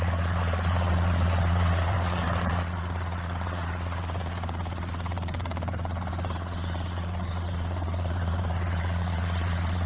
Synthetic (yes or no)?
yes